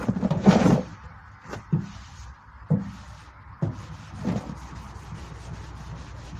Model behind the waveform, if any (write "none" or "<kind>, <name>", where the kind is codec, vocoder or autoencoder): none